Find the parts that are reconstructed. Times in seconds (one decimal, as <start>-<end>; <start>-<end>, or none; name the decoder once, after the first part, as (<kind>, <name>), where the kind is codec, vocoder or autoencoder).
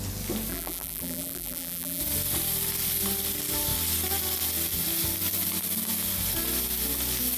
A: 0.5-2.0 (vocoder, BigVGAN v2)